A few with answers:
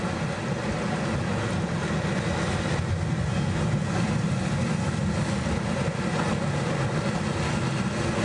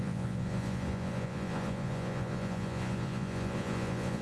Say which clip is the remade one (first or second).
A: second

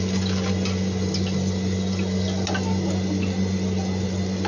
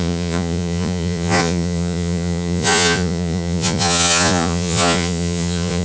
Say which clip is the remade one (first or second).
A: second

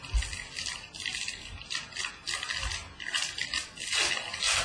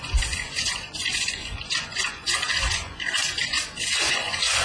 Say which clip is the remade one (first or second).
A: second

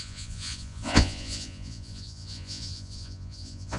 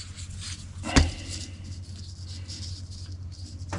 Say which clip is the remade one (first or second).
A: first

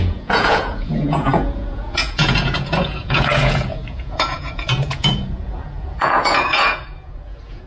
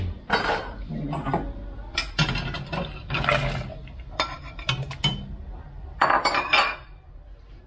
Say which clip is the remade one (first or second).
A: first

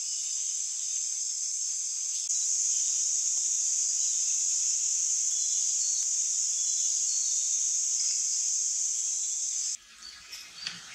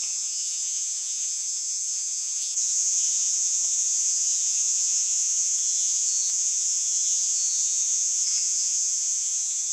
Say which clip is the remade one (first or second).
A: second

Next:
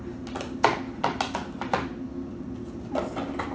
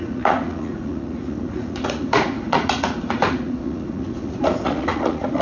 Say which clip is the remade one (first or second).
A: second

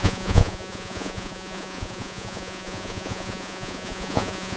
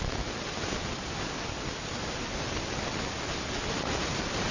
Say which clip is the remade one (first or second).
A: first